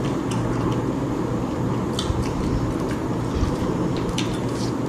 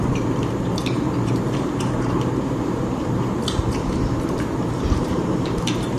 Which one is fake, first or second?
second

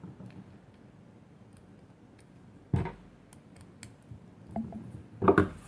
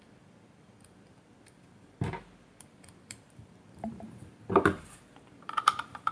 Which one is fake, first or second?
second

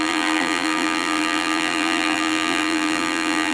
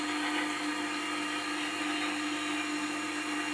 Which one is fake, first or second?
first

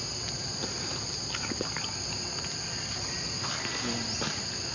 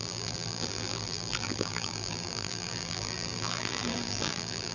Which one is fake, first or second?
second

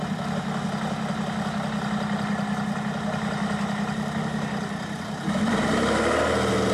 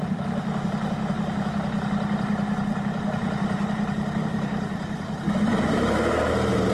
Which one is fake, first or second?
second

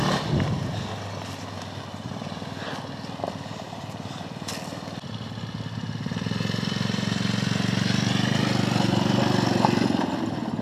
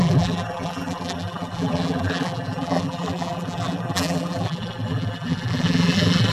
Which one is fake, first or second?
second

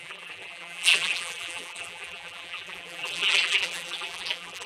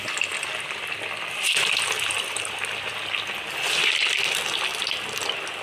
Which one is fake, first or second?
first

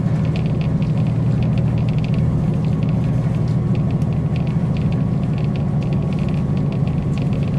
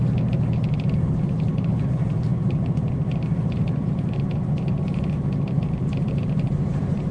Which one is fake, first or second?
second